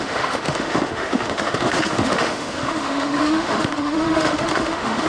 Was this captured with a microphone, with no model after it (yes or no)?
no